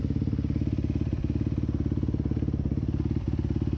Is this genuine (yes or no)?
yes